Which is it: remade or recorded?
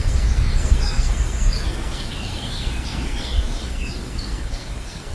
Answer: remade